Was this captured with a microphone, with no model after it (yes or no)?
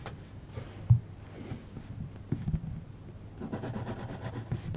yes